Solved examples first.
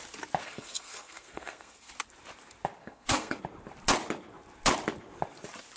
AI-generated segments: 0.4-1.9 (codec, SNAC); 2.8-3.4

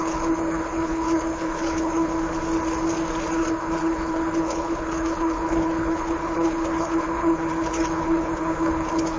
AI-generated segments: 0.0-2.1 (codec, HILCodec); 3.4-9.2